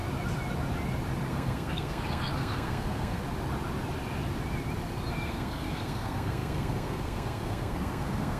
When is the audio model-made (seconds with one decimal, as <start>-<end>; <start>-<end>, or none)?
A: 1.3-3.2; 5.1-8.4